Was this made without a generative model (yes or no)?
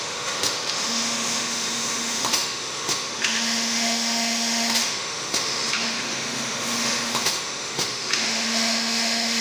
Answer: no